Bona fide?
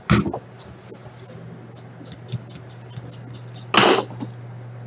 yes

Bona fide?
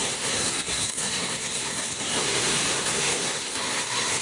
no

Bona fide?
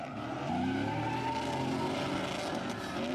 yes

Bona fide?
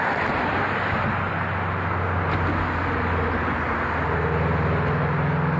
yes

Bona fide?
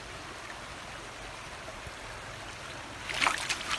yes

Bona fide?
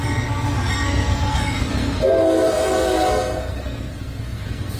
no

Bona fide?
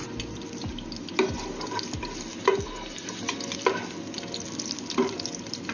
yes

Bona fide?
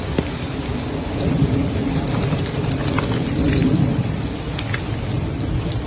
yes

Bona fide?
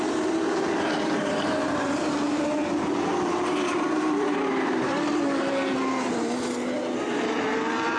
no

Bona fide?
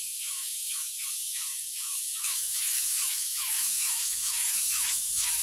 no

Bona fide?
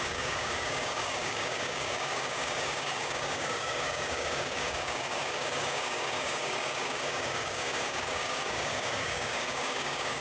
no